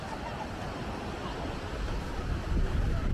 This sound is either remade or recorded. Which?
recorded